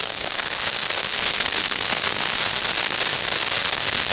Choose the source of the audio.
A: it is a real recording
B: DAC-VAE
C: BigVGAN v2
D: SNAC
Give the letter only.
D